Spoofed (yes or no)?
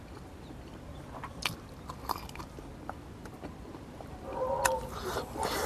no